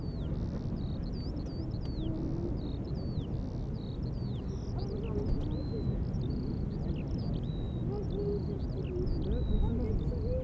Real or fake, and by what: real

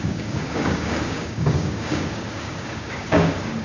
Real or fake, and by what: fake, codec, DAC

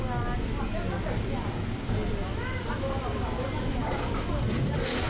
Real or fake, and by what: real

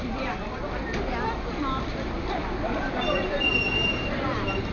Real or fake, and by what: fake, vocoder, BigVGAN v2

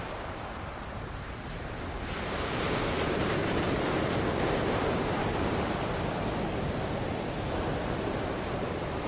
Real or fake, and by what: fake, vocoder, BigVGAN v2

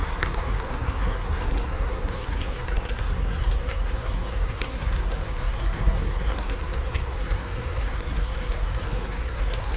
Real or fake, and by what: fake, codec, SNAC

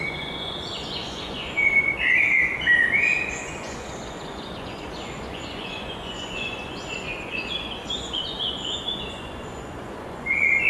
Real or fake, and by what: fake, vocoder, Vocos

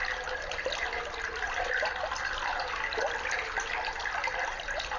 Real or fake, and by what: real